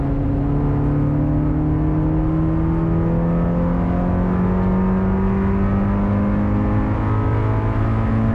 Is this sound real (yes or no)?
yes